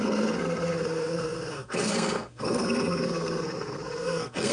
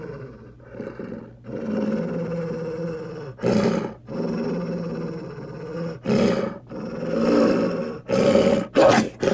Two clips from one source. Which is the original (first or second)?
second